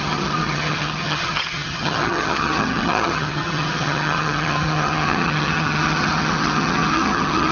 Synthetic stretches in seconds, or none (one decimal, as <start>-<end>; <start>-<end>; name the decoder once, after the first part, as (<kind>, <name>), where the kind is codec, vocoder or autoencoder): 0.0-7.5 (vocoder, HiFi-GAN)